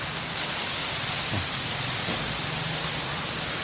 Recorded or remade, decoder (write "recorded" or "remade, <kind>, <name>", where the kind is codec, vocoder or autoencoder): recorded